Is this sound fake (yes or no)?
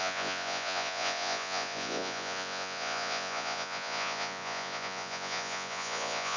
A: yes